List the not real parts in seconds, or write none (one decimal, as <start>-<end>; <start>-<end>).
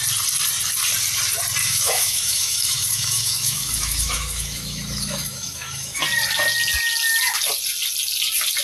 1.6-6.0